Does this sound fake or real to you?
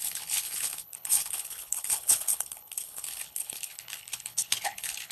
fake